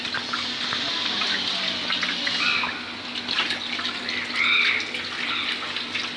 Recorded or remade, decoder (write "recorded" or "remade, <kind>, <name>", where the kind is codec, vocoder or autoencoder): recorded